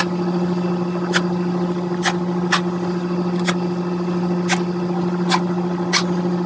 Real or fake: real